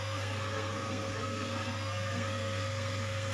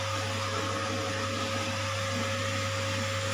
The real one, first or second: second